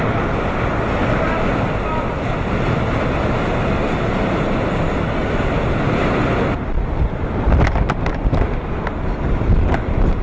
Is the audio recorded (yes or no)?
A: yes